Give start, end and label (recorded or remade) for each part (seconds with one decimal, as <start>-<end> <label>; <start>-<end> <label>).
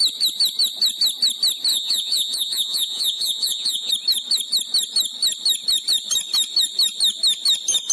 0.0-1.7 recorded; 1.7-3.9 remade; 3.9-7.9 recorded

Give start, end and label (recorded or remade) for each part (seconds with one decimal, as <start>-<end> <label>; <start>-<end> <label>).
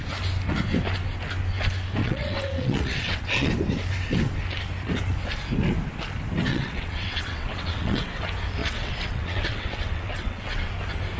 0.0-2.0 recorded; 2.0-3.5 remade; 3.5-6.5 recorded; 6.5-8.2 remade; 8.2-8.6 recorded; 8.6-10.7 remade; 10.7-11.2 recorded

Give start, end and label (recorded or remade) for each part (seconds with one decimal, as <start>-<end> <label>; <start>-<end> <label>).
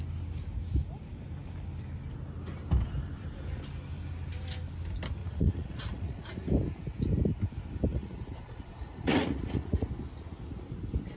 0.0-5.2 recorded; 5.2-6.3 remade; 6.3-7.9 recorded; 7.9-9.9 remade; 9.9-11.2 recorded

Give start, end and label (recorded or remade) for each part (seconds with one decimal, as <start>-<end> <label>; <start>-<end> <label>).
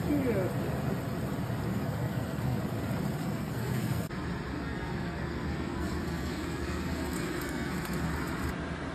0.0-1.7 recorded; 1.7-2.6 remade; 2.6-3.2 recorded; 3.2-4.1 remade; 4.1-4.5 recorded; 4.5-8.1 remade; 8.1-8.9 recorded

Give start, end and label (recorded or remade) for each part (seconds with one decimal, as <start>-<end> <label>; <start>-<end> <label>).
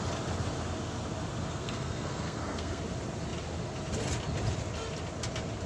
0.0-1.5 recorded; 1.5-2.8 remade; 2.8-5.7 recorded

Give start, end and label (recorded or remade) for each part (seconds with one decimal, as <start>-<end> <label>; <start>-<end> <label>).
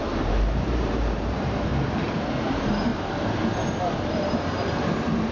0.0-1.7 remade; 1.7-2.4 recorded; 2.4-2.9 remade; 2.9-3.9 recorded; 3.9-5.3 remade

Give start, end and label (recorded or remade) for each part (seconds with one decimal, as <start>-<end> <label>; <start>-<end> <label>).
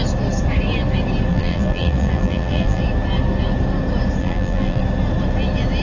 0.0-1.3 recorded; 1.3-2.8 remade; 2.8-4.2 recorded; 4.2-4.8 remade; 4.8-5.8 recorded